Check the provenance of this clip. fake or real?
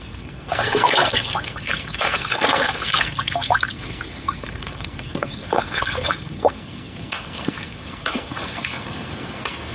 fake